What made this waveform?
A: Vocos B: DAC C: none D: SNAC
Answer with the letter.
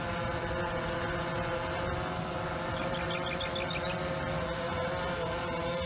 C